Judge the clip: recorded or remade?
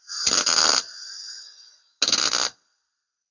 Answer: recorded